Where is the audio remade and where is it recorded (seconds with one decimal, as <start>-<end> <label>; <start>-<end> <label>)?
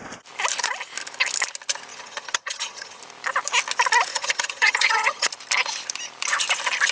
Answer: 0.0-1.9 recorded; 1.9-3.0 remade; 3.0-4.1 recorded; 4.1-5.3 remade; 5.3-6.9 recorded